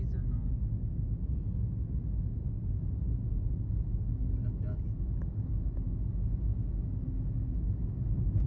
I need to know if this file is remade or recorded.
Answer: recorded